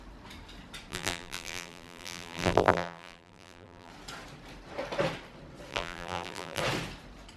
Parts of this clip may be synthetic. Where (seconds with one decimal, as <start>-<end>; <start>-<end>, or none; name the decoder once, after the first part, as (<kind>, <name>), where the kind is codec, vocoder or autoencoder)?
0.9-3.9 (vocoder, BigVGAN v2); 5.7-6.6

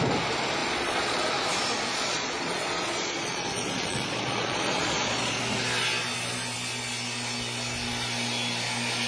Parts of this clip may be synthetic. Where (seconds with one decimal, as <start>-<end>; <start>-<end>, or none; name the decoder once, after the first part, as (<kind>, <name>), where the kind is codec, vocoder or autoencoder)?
0.6-1.3 (vocoder, Vocos); 1.9-5.4